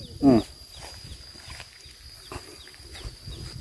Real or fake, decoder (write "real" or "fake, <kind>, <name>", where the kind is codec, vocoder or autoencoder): real